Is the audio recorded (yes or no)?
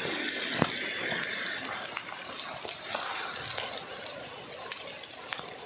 yes